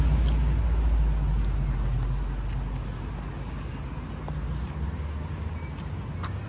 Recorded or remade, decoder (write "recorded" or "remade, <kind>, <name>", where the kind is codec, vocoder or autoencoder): recorded